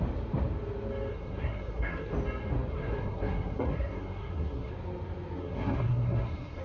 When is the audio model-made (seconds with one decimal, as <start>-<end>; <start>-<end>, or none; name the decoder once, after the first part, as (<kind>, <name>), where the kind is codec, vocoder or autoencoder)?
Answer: 1.1-2.1 (codec, SNAC); 2.7-4.7; 5.4-6.6

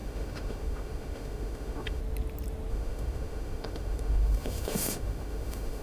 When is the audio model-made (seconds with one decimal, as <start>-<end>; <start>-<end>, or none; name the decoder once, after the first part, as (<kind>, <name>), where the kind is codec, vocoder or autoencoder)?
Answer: 0.0-2.0 (autoencoder, DAC-VAE); 2.7-5.8

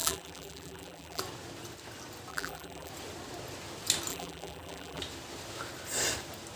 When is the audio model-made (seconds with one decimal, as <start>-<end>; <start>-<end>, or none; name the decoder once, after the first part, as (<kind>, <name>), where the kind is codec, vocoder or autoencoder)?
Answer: 0.0-1.2 (vocoder, BigVGAN v2); 2.3-2.9; 4.1-5.0

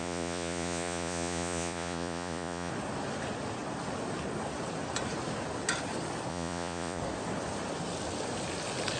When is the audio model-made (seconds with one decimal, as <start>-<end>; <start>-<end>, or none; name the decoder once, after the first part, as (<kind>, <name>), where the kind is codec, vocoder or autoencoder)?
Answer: 0.0-2.7 (vocoder, Vocos); 6.3-7.0